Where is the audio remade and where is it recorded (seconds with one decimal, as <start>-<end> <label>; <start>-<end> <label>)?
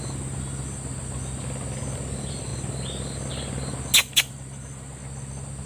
0.0-4.0 recorded; 4.0-5.0 remade; 5.0-5.7 recorded